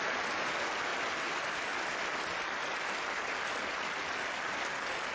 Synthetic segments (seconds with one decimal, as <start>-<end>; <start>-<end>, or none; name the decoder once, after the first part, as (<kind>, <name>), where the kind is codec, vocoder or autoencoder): 0.9-4.0 (vocoder, BigVGAN v2)